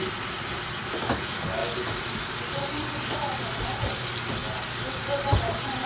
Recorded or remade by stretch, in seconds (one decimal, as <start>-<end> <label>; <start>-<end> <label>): 0.0-5.9 recorded